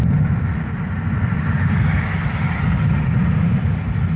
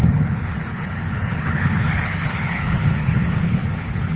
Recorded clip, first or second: first